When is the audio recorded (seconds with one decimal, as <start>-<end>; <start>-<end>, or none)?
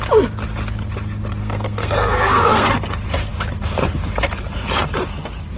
0.0-1.4; 2.7-5.6